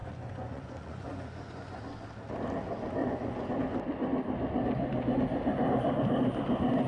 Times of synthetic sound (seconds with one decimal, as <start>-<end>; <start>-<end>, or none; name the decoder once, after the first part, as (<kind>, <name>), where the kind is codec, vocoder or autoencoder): 0.0-1.8 (vocoder, Vocos); 3.0-3.5